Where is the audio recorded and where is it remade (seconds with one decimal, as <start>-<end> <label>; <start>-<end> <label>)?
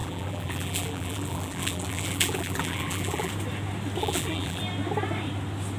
0.0-3.3 remade; 3.3-4.0 recorded; 4.0-4.6 remade; 4.6-5.8 recorded